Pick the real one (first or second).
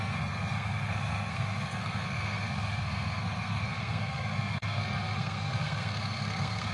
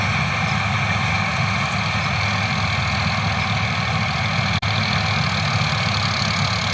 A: second